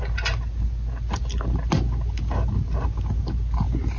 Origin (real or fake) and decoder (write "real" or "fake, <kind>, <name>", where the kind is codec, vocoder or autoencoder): real